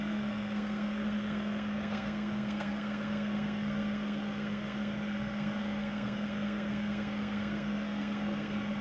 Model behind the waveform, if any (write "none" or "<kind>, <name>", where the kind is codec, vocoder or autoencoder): codec, SNAC